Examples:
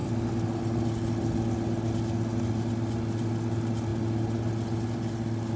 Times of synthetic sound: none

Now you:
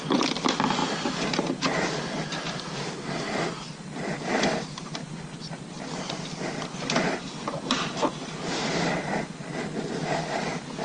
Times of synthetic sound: none